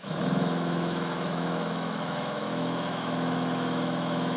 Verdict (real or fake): fake